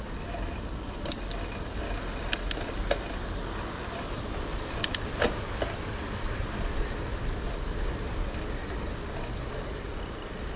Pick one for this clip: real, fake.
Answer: real